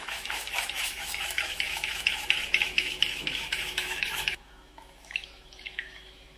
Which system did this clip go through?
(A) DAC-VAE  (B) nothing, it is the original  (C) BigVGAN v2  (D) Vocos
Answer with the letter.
A